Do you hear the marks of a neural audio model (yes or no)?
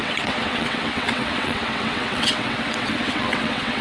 yes